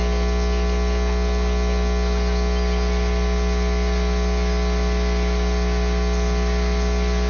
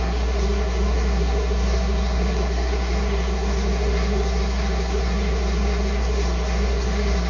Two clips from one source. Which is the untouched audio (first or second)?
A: first